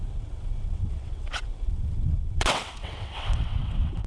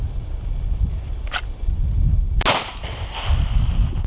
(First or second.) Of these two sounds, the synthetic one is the first